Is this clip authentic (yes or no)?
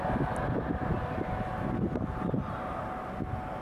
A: yes